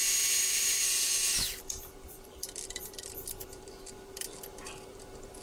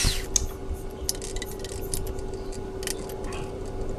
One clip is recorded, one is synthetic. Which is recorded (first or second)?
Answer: second